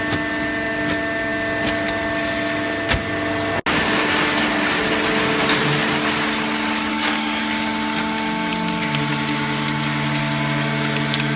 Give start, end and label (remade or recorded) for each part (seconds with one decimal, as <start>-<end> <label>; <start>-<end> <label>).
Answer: 0.0-6.9 recorded; 6.9-7.4 remade; 7.4-11.4 recorded